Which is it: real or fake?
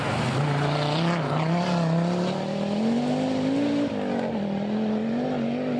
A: real